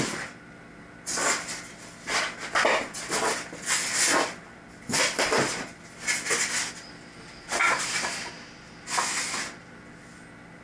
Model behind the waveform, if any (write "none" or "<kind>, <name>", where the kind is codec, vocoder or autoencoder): none